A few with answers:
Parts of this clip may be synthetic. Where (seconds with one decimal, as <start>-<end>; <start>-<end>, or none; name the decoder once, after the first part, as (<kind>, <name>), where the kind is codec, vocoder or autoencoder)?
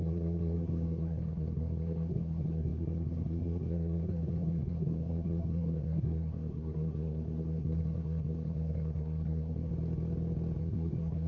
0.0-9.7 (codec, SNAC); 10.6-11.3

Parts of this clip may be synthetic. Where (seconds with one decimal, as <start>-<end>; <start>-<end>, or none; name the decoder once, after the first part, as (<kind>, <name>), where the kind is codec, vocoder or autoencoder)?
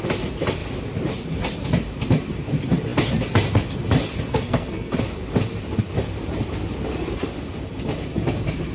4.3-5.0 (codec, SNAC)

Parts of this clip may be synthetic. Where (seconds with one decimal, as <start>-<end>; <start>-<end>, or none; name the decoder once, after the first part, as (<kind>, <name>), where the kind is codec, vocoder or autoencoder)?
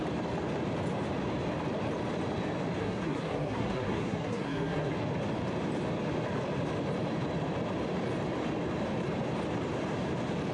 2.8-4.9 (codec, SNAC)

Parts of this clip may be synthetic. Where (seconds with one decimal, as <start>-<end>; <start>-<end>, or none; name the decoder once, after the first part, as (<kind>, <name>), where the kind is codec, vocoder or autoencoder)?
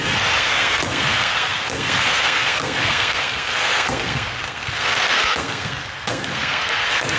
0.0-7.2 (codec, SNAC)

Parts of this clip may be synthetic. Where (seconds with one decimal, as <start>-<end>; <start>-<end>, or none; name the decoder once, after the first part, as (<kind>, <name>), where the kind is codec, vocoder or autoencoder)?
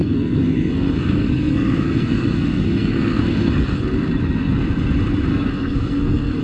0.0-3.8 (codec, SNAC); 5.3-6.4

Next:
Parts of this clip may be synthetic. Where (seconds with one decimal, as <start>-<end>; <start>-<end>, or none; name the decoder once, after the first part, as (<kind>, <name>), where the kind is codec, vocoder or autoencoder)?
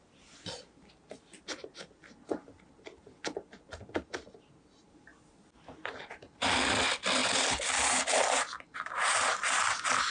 none